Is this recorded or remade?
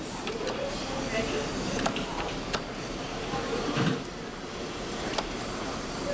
remade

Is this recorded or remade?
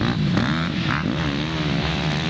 recorded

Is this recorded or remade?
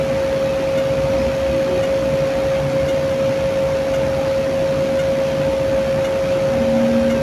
recorded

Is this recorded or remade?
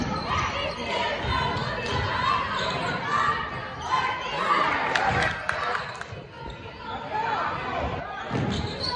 recorded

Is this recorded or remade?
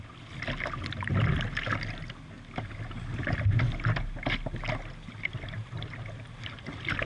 recorded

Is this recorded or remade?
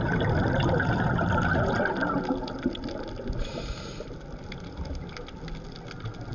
recorded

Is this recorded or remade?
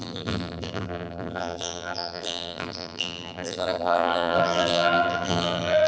remade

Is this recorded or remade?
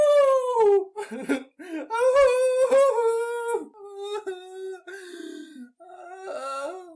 recorded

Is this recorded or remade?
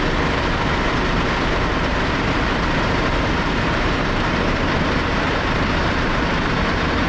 remade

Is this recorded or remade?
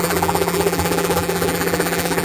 remade